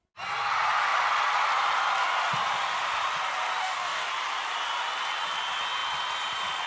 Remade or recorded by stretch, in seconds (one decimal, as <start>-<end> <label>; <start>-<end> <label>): 0.0-3.6 recorded; 3.6-4.1 remade; 4.1-6.7 recorded